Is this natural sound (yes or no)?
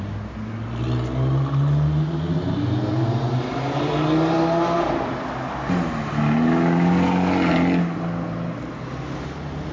yes